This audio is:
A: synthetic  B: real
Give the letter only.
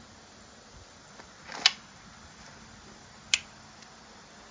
B